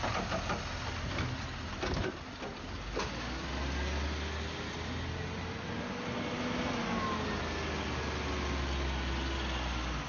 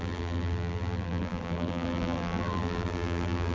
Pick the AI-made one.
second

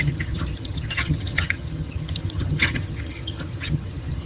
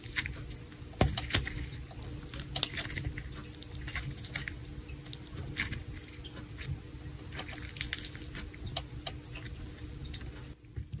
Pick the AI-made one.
first